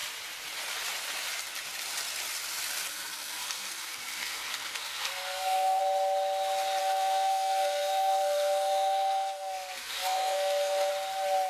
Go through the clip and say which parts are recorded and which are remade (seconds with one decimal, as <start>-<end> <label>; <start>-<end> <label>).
0.0-2.9 recorded; 2.9-5.8 remade; 5.8-6.8 recorded; 6.8-10.9 remade; 10.9-11.5 recorded